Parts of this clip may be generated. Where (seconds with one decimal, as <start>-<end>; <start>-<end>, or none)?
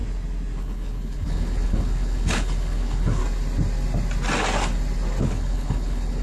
0.6-3.2; 5.2-6.2